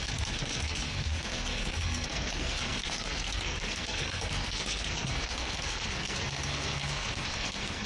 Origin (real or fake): fake